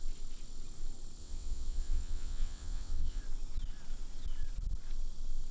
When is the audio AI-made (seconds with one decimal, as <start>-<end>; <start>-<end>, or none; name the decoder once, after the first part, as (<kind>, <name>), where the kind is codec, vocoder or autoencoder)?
1.2-3.2 (vocoder, WaveNeXt)